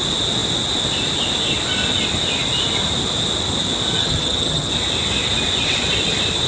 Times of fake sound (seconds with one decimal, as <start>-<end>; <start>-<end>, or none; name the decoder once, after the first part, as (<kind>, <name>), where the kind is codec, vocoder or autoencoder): 4.0-4.7 (vocoder, HiFi-GAN)